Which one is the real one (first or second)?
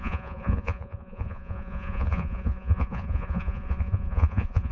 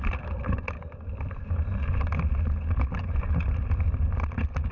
second